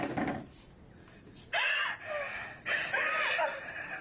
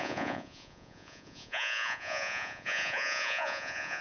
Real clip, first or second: first